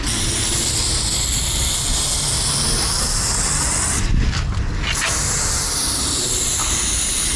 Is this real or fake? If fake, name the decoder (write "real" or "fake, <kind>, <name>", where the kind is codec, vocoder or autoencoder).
real